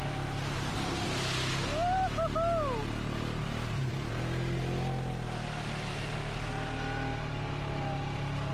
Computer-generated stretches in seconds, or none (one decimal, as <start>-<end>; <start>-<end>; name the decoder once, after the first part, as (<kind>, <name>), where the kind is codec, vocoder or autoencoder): 0.0-0.7 (vocoder, BigVGAN v2)